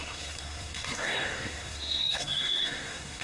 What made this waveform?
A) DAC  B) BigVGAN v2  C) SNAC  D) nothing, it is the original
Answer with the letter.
C